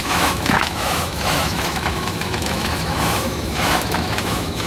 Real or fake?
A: fake